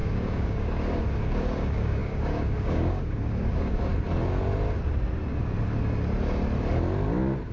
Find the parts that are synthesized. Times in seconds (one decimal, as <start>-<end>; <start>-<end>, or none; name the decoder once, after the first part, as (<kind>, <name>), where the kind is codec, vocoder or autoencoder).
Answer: 0.0-3.9 (codec, DAC)